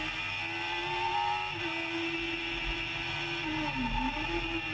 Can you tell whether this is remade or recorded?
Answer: recorded